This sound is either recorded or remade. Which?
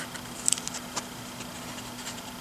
recorded